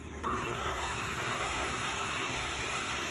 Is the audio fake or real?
fake